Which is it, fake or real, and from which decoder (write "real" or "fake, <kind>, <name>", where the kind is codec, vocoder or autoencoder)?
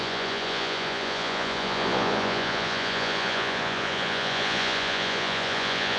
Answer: fake, vocoder, Vocos